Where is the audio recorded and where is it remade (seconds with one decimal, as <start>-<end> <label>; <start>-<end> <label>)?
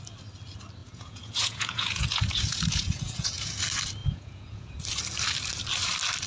0.0-0.8 recorded; 0.8-3.6 remade; 3.6-4.0 recorded; 4.0-4.7 remade; 4.7-6.3 recorded